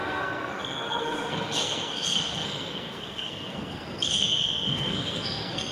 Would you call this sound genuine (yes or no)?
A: no